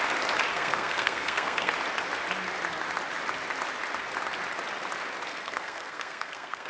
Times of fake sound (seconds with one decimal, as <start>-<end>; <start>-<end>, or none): 0.5-1.7; 5.3-6.7